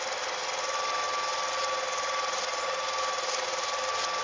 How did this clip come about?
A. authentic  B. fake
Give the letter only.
A